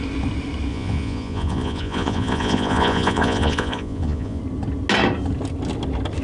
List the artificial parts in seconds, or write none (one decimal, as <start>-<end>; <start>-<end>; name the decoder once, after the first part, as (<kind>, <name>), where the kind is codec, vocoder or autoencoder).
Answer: 0.7-4.4 (vocoder, Vocos)